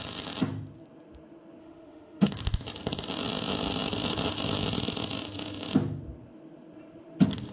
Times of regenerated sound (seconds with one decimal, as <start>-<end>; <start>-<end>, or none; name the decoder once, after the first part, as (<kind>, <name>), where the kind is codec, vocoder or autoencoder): 1.6-2.3 (autoencoder, DAC-VAE)